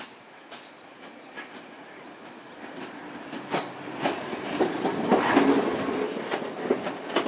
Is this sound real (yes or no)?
yes